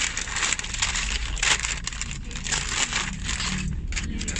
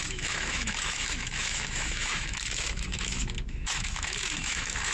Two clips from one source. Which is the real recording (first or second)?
first